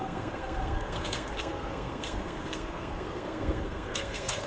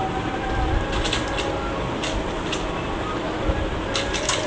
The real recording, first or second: second